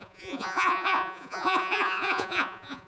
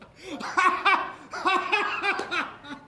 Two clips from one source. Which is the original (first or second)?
second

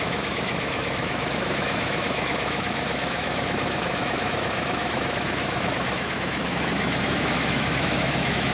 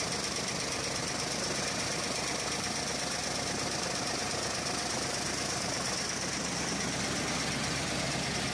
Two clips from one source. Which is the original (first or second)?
second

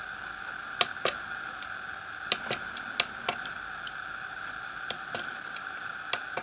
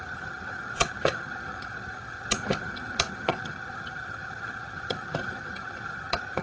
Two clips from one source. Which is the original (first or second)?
first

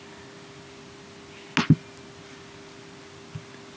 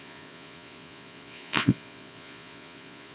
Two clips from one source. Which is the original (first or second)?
first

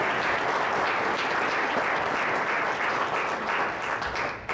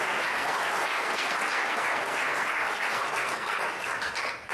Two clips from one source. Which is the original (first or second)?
first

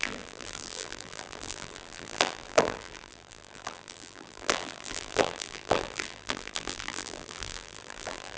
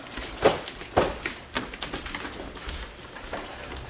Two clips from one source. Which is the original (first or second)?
second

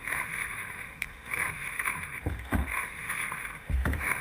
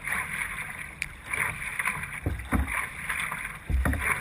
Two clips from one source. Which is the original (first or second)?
second